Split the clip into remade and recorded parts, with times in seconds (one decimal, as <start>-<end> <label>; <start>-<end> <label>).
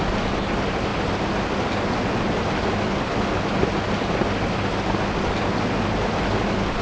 0.0-6.8 recorded